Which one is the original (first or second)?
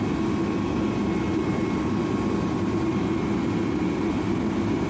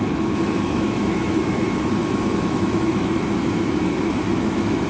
first